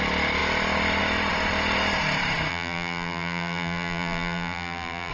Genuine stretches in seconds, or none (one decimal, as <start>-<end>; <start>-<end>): 0.0-2.5